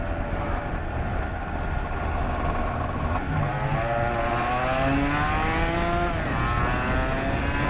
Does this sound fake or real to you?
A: real